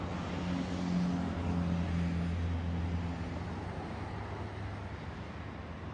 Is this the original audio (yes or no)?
yes